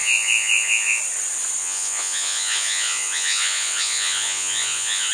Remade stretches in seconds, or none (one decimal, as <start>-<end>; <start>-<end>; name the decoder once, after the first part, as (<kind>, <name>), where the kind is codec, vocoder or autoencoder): 0.0-1.0 (vocoder, Vocos); 1.6-5.1